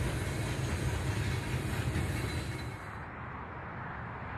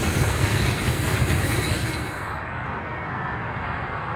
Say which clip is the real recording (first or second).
first